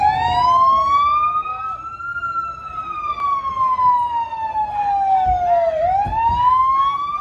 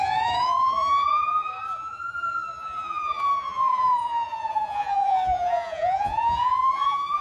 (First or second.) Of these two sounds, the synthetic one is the second